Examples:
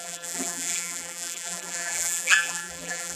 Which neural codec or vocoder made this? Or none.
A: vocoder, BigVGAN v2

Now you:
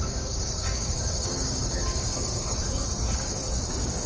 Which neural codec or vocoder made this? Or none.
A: codec, DAC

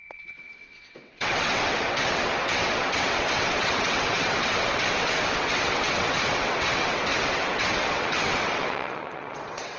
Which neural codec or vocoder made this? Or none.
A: vocoder, WaveNeXt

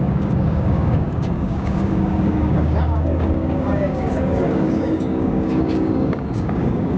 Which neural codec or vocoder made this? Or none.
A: codec, DAC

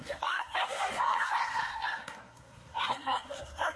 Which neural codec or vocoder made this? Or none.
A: codec, SNAC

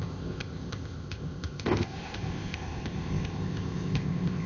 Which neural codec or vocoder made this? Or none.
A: codec, ZipCodec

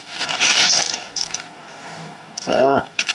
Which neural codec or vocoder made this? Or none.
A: codec, DAC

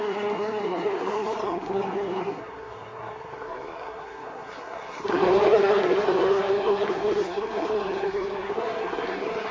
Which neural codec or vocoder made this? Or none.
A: codec, SNAC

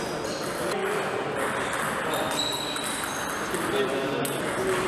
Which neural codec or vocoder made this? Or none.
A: none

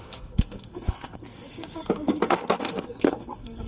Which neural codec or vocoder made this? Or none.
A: codec, SNAC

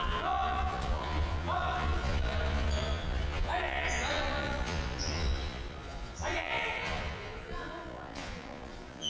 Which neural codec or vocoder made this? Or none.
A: vocoder, Vocos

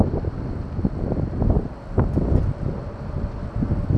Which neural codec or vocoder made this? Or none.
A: none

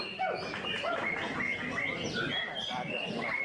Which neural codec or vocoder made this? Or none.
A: none